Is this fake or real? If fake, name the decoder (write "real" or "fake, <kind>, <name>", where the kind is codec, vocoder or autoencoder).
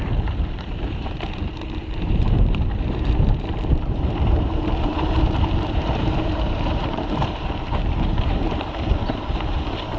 fake, vocoder, BigVGAN v2